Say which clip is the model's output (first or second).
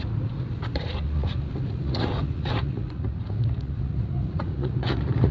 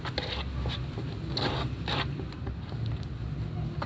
first